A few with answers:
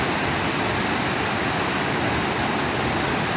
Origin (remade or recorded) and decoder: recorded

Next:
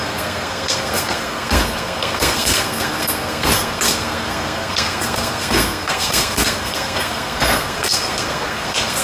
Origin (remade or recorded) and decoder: remade, codec, SNAC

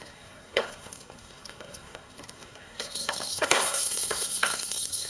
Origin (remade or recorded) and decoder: remade, codec, SNAC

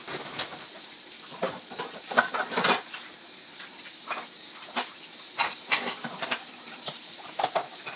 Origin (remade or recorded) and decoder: remade, vocoder, BigVGAN v2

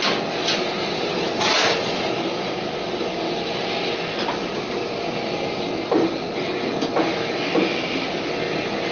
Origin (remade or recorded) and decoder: recorded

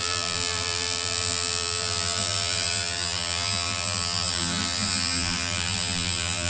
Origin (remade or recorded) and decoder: remade, vocoder, BigVGAN v2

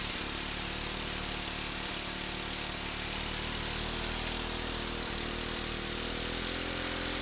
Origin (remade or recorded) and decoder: recorded